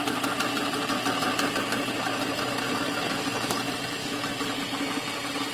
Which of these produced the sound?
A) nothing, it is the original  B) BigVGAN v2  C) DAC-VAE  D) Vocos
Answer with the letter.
A